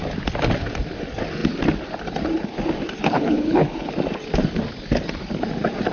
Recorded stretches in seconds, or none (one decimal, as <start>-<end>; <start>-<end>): 0.0-3.0; 3.9-5.9